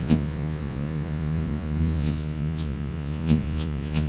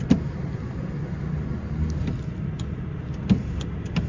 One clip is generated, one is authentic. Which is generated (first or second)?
first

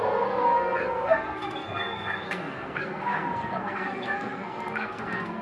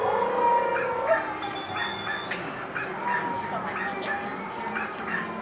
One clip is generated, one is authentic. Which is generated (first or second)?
first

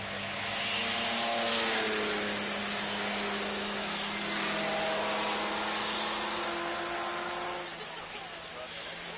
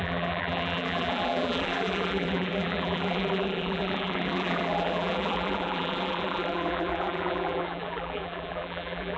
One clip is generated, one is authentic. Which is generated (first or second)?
second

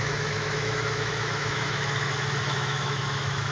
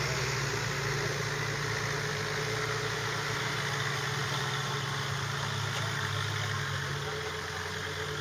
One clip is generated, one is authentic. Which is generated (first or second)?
first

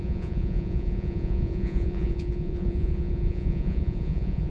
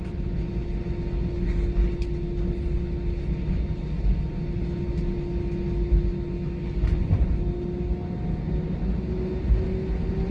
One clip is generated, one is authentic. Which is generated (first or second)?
first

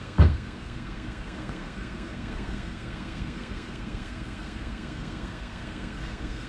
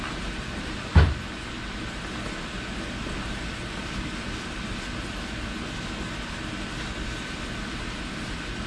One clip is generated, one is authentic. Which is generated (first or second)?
first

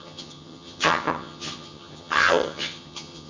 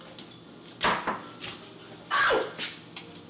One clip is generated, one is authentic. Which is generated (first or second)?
first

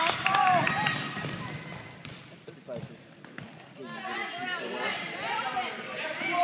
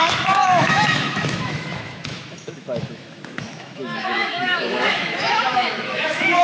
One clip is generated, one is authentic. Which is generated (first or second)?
second